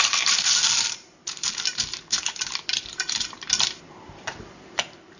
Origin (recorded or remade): remade